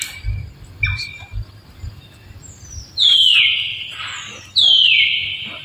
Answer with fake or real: fake